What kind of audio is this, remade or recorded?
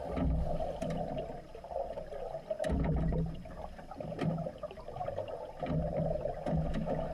recorded